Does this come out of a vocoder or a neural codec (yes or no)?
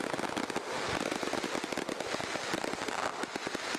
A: no